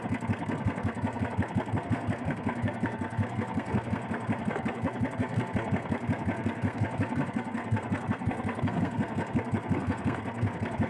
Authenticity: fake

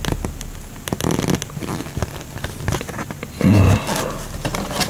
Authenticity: real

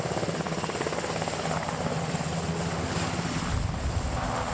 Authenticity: real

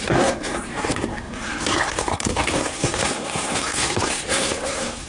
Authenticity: fake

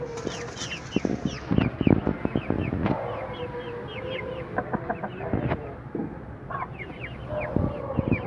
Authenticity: real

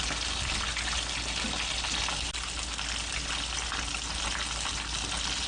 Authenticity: real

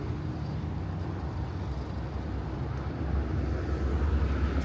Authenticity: real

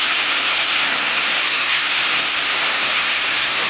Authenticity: fake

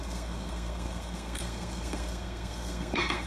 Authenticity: fake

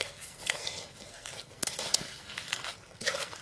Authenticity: fake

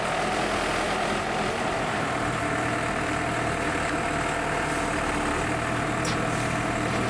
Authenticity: real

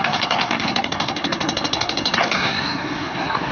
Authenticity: fake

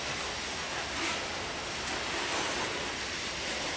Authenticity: real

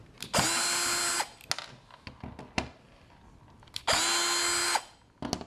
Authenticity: real